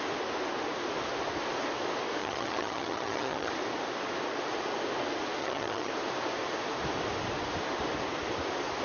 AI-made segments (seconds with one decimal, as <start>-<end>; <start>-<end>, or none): 2.2-3.5; 5.4-5.9